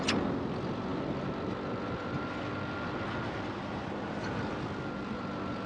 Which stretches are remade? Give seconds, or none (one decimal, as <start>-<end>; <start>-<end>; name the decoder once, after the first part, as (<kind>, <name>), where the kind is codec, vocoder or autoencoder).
none